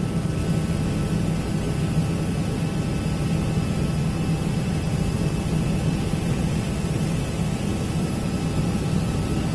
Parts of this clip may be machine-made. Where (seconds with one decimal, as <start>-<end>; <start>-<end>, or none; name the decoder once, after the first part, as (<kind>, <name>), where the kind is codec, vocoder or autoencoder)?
0.0-0.4 (vocoder, BigVGAN v2); 4.5-9.5